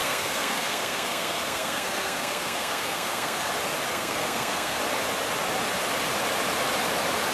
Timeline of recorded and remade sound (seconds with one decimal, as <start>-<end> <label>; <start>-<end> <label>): 0.0-3.5 remade; 3.5-3.9 recorded; 3.9-4.8 remade; 4.8-7.3 recorded